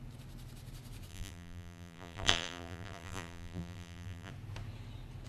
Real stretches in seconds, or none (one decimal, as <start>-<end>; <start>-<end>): 0.0-1.1; 4.3-5.3